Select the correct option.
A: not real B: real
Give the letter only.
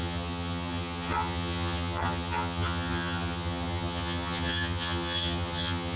A